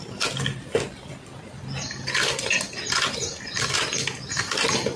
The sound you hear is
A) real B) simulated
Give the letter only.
A